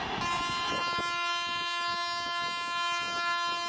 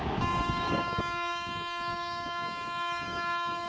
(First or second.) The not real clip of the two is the second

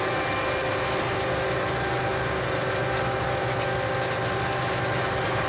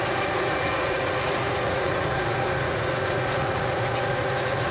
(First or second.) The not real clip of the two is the second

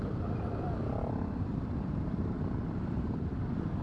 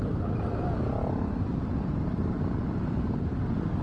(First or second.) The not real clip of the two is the first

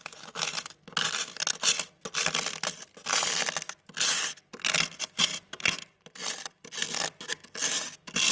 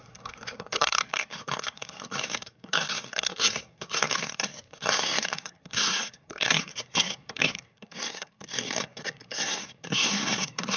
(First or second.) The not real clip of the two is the second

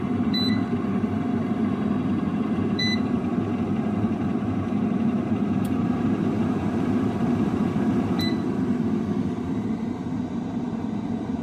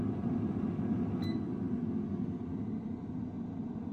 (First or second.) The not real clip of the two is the first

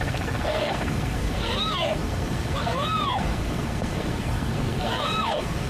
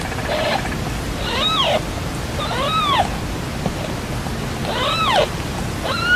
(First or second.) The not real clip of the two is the first